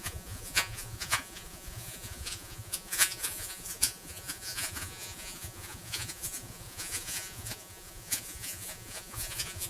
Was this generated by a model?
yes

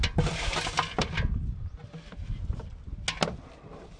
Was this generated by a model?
no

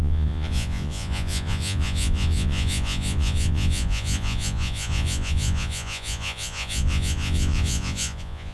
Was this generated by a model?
yes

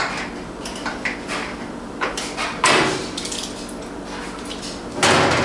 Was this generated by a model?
no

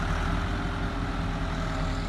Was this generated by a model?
no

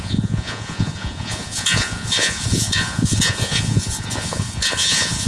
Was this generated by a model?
yes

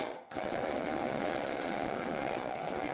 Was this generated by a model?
yes